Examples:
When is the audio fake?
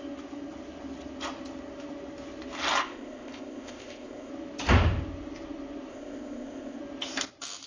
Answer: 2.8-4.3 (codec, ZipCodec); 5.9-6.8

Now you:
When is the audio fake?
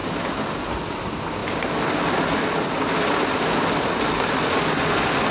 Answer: none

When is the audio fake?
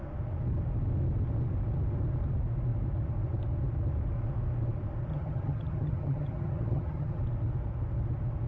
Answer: 5.1-7.2 (vocoder, HiFi-GAN)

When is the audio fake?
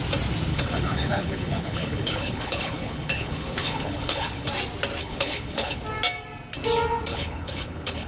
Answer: 0.5-4.5 (codec, HILCodec); 5.0-5.8; 7.1-8.1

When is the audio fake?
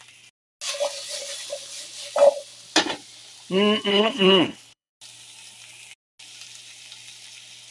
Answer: 3.9-4.9 (codec, HILCodec)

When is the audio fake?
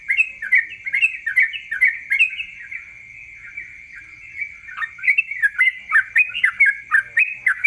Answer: none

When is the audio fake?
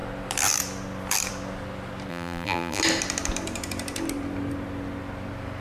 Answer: 2.1-2.8 (vocoder, BigVGAN v2)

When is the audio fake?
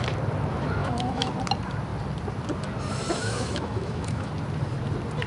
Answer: 0.8-1.3 (autoencoder, DAC-VAE); 3.2-4.3